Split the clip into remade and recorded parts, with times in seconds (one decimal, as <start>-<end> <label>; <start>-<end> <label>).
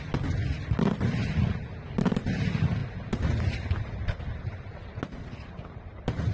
0.0-6.3 recorded